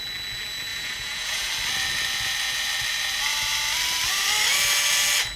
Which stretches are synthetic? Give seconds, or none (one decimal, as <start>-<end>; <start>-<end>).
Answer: 0.7-1.5